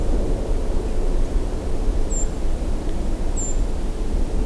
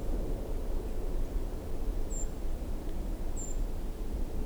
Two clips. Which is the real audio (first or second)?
first